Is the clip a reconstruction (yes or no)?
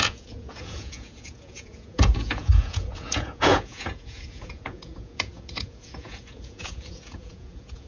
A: yes